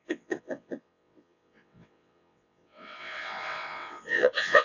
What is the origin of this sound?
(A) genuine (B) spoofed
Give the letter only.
B